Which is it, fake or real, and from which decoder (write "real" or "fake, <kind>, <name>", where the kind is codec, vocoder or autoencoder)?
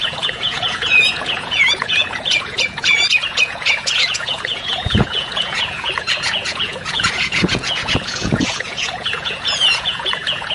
fake, vocoder, Vocos